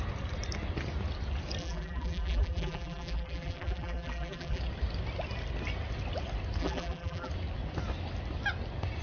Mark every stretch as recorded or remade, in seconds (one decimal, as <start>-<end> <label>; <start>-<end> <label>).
0.0-1.6 recorded; 1.6-4.6 remade; 4.6-6.6 recorded; 6.6-7.3 remade; 7.3-9.0 recorded